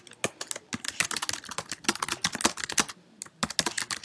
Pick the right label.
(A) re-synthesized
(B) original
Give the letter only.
B